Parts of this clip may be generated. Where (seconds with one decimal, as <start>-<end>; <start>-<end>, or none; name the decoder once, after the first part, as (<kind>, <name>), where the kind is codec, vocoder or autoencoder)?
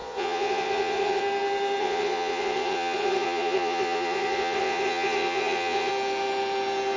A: 0.0-1.2 (vocoder, Vocos); 1.8-5.9